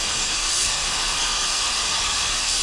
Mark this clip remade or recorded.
remade